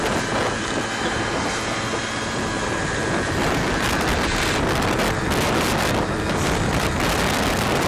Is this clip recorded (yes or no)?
yes